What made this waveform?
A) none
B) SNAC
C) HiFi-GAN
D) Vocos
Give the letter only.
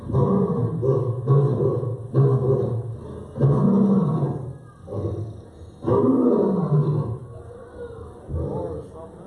A